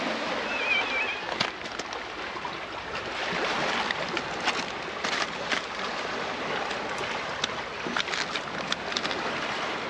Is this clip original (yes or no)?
yes